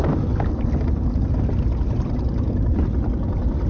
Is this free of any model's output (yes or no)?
yes